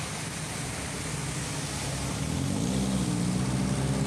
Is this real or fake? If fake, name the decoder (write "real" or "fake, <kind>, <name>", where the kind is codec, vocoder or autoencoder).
real